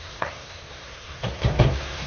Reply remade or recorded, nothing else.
remade